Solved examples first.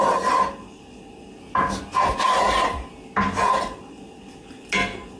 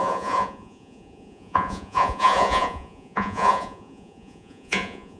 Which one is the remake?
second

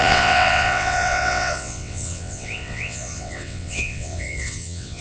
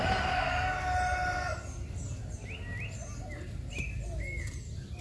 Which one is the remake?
first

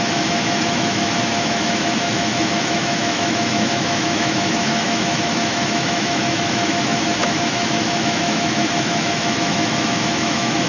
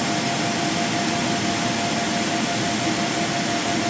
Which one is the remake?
first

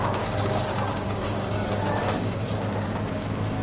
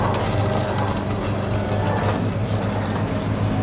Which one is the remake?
first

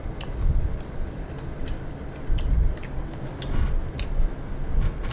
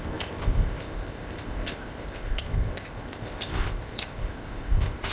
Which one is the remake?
second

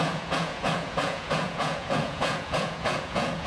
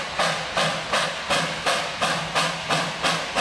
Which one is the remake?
first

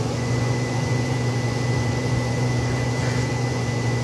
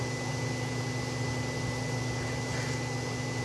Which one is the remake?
first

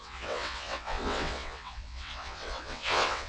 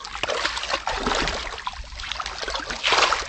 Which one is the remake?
first